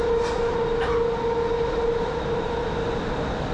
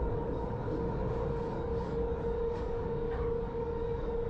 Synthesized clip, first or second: second